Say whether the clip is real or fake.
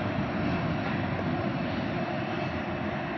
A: real